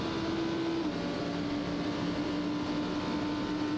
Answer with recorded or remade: recorded